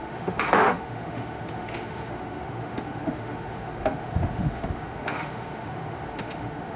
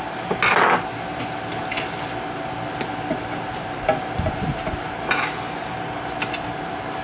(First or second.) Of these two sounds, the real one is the second